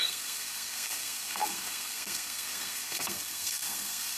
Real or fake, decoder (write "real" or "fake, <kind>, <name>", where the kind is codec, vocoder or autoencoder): fake, codec, SNAC